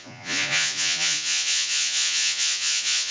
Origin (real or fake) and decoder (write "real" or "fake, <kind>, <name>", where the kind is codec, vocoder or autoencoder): fake, vocoder, Vocos